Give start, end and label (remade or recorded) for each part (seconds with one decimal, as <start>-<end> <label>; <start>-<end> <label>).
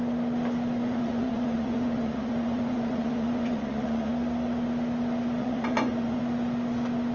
0.0-0.8 recorded; 0.8-4.1 remade; 4.1-5.4 recorded; 5.4-6.2 remade; 6.2-7.1 recorded